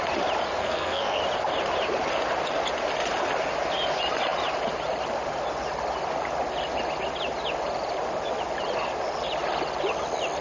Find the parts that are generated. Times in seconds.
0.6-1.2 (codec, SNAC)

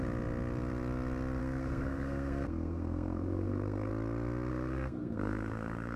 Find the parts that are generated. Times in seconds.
1.4-3.9 (codec, SNAC); 4.5-6.0

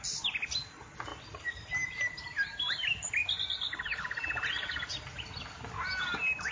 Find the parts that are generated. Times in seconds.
none

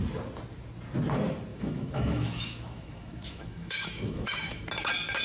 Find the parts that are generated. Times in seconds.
1.5-4.6 (autoencoder, DAC-VAE)

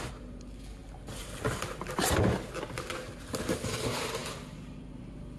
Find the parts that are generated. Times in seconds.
none

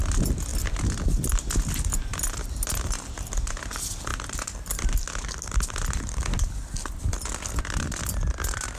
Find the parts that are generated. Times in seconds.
none

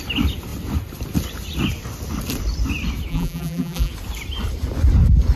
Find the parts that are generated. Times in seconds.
3.1-3.9 (vocoder, BigVGAN v2)

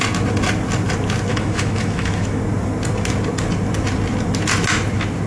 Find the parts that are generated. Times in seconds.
1.3-2.4 (autoencoder, DAC-VAE)